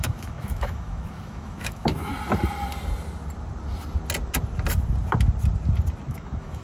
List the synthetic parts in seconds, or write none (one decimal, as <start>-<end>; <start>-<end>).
0.0-2.1; 6.1-6.6